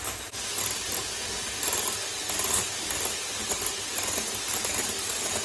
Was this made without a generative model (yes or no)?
yes